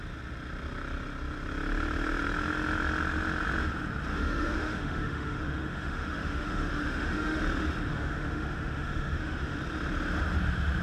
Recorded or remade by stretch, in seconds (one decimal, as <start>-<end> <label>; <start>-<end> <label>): 0.0-4.1 recorded; 4.1-7.4 remade; 7.4-7.9 recorded; 7.9-9.6 remade; 9.6-10.8 recorded